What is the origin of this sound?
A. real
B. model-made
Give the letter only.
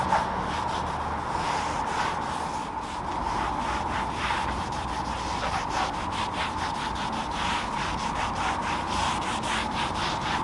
A